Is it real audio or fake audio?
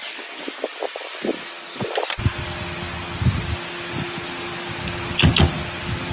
real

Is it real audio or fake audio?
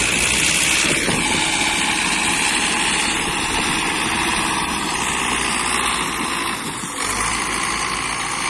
real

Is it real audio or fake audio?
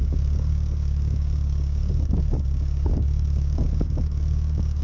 fake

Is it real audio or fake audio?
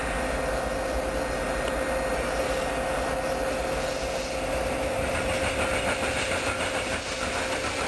real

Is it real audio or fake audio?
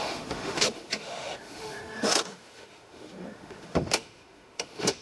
fake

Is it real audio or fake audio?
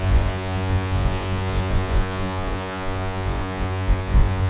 fake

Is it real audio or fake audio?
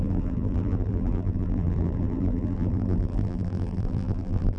fake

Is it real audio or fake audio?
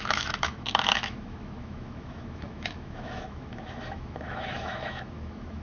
fake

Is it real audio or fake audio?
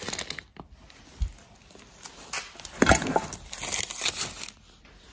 real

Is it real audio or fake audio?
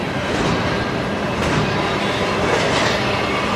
real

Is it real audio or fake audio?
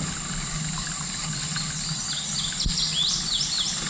real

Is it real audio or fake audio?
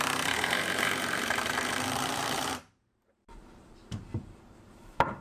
fake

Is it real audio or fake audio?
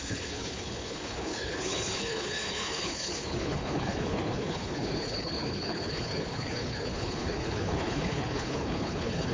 fake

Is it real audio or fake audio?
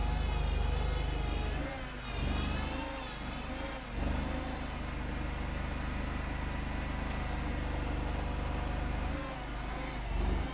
real